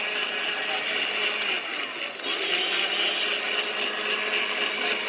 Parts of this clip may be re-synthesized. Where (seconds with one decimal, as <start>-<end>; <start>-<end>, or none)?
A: none